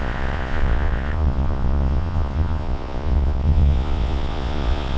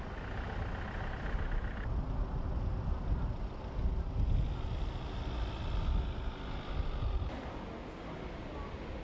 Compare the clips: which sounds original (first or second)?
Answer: second